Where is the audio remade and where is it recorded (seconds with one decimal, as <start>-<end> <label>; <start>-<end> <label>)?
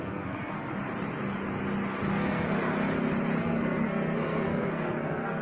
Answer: 0.0-0.7 remade; 0.7-2.1 recorded; 2.1-2.7 remade; 2.7-3.4 recorded; 3.4-5.4 remade